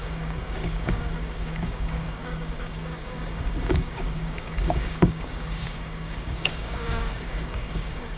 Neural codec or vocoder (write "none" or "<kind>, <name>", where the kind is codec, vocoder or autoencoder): codec, DAC